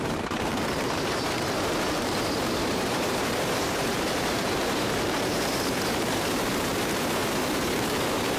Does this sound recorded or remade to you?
remade